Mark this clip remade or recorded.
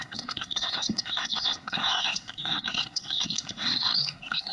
remade